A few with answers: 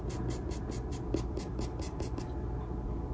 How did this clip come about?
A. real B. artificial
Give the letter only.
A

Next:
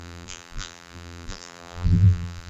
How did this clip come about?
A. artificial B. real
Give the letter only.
A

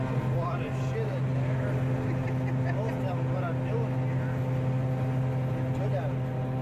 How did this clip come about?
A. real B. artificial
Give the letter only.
A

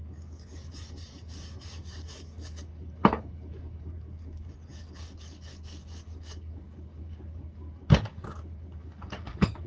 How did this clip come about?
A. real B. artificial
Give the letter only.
B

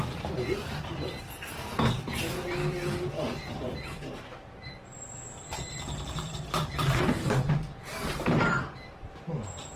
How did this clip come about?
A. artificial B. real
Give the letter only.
A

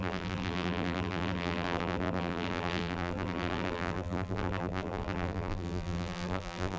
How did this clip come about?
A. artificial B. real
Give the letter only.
A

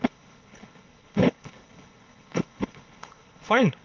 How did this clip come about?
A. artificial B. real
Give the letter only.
A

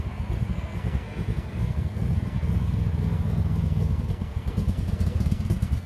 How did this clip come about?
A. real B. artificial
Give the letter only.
B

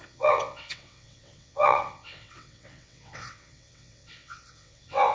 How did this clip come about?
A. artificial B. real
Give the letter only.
A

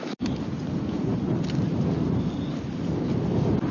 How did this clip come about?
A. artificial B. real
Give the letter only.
B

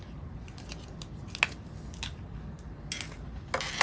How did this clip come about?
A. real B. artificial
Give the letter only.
A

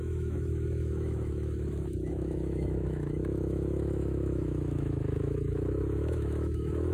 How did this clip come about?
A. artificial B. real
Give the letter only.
A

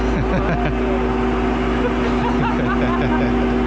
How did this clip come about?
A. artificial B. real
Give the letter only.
B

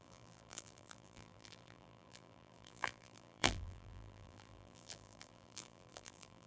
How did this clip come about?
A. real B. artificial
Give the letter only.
B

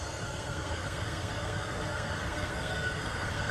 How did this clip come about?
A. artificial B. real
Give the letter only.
A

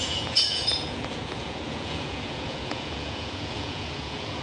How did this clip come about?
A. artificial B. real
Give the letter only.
A